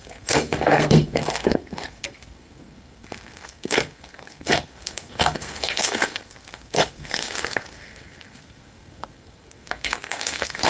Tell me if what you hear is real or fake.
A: fake